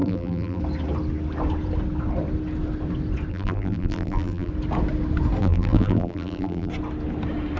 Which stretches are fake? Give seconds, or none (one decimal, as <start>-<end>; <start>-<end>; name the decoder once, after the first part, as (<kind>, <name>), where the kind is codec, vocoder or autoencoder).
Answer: 0.0-0.6 (vocoder, BigVGAN v2); 3.3-4.5; 5.4-6.7